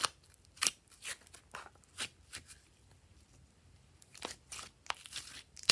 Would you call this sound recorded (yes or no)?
yes